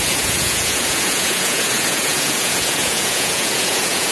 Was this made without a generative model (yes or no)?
no